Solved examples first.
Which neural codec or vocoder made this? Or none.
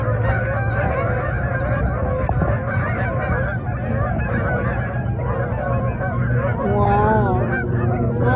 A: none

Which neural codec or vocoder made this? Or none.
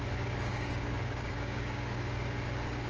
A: codec, DAC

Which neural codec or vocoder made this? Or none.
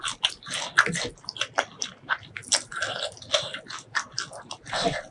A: none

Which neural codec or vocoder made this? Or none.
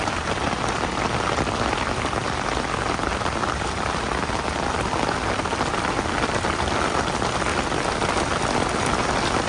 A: none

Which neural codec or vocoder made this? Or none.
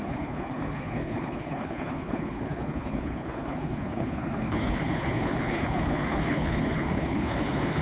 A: codec, HILCodec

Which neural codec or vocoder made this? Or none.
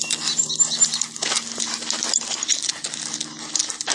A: none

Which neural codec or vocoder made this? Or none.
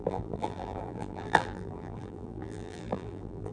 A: vocoder, BigVGAN v2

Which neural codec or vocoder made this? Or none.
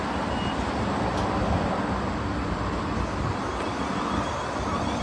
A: none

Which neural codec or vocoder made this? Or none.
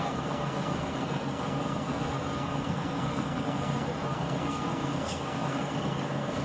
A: codec, SNAC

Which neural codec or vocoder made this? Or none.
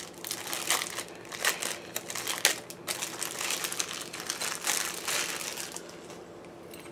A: none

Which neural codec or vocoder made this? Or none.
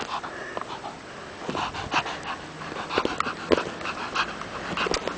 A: none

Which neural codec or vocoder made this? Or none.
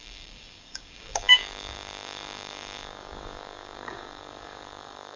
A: codec, DAC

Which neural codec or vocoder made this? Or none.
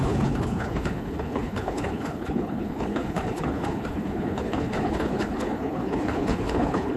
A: codec, HILCodec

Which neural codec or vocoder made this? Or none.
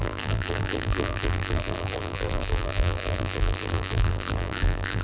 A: vocoder, BigVGAN v2